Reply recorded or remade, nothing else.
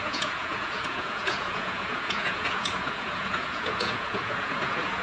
remade